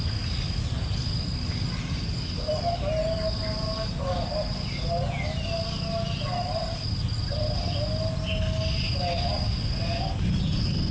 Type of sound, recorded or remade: recorded